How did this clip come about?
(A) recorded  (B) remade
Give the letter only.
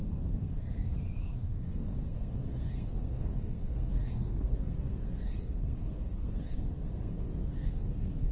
B